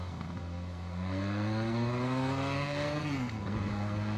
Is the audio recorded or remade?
remade